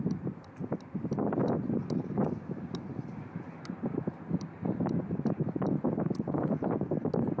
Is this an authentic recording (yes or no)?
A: yes